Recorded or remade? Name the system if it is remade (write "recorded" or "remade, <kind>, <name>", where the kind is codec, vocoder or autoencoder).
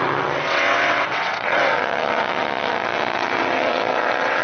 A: remade, vocoder, WaveNeXt